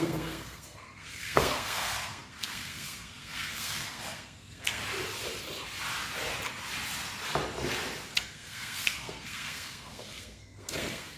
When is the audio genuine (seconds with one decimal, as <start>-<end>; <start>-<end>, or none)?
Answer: 4.8-8.1